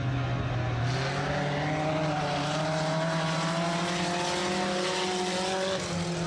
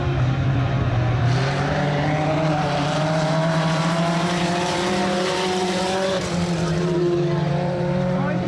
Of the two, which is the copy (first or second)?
second